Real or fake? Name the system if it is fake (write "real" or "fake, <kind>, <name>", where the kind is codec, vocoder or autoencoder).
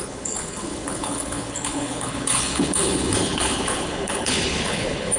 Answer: fake, codec, HILCodec